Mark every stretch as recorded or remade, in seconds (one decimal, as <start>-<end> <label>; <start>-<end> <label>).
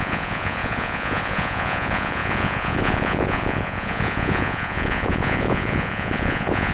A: 0.0-6.7 remade